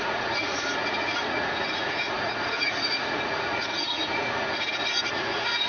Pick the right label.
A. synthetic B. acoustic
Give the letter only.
A